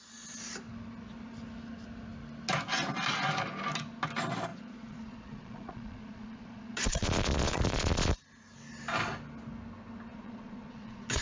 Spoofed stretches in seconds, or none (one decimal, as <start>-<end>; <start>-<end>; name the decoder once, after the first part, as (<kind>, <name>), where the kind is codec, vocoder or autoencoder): 4.5-8.1 (vocoder, Vocos); 10.1-11.2